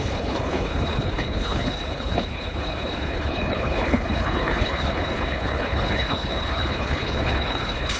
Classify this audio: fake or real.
fake